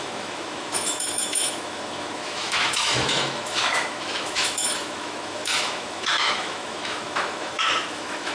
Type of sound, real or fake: fake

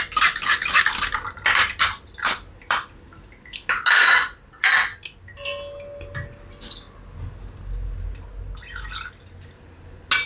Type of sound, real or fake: real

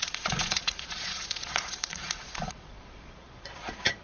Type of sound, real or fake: fake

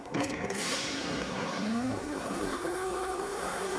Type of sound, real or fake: fake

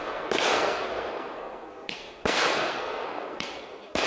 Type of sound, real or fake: fake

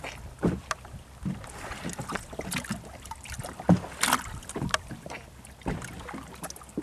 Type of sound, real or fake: real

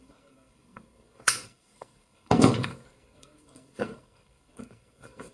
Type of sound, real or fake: fake